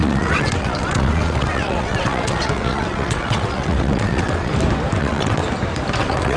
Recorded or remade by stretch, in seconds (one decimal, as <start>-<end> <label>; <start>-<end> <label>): 0.0-4.5 remade; 4.5-5.0 recorded; 5.0-5.4 remade; 5.4-6.0 recorded; 6.0-6.4 remade